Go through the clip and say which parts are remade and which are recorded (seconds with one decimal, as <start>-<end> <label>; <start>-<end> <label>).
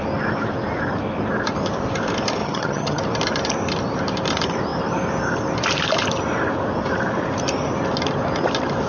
0.0-2.4 recorded; 2.4-3.0 remade; 3.0-8.9 recorded